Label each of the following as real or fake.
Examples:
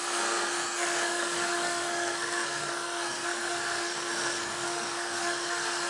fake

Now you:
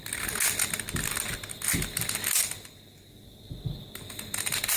real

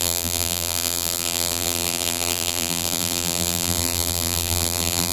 fake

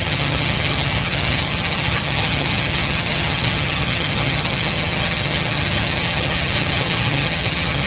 fake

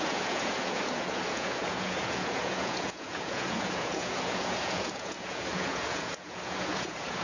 fake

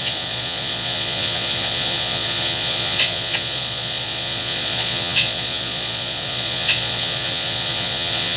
fake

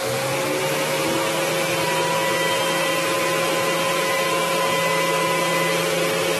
real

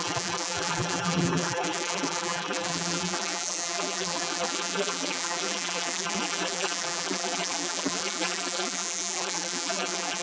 fake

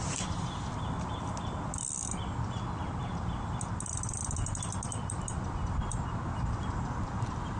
real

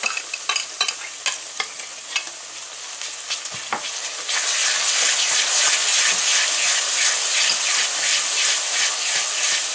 real